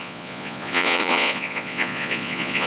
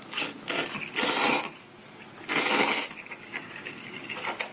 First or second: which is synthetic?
first